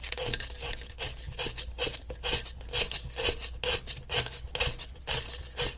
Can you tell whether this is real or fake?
real